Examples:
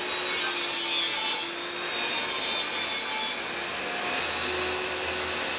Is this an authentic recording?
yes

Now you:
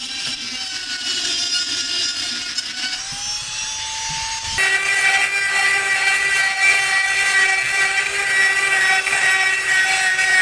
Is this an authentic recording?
yes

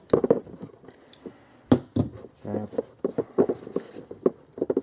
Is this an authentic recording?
yes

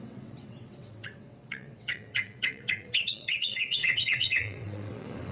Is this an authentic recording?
no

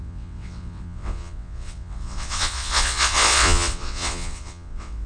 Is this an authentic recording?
no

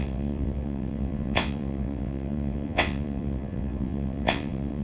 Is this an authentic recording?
no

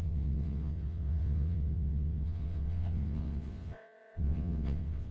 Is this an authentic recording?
no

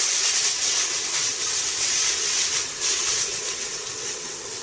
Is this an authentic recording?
no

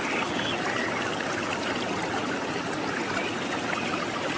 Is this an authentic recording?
yes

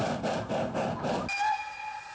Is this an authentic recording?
yes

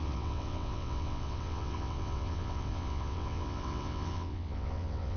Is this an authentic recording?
no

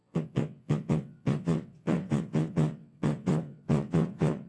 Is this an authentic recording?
no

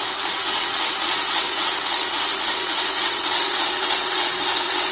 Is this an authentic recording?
no